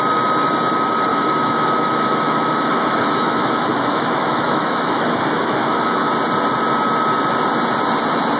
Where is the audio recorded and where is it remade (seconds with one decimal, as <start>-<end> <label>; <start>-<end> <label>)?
0.0-1.1 recorded; 1.1-6.1 remade; 6.1-8.4 recorded